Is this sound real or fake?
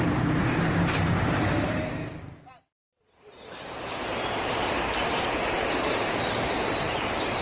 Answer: fake